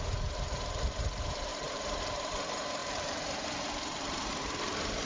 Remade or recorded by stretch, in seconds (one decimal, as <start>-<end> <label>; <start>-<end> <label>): 0.0-1.5 recorded; 1.5-2.3 remade; 2.3-2.8 recorded; 2.8-4.3 remade; 4.3-5.1 recorded